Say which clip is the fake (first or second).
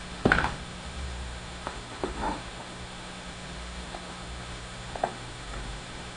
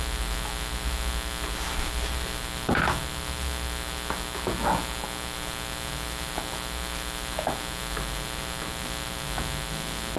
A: first